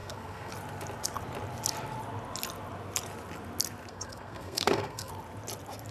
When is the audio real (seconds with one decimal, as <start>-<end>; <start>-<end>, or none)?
0.5-3.9; 5.1-5.9